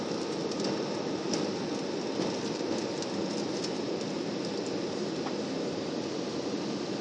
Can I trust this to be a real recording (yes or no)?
no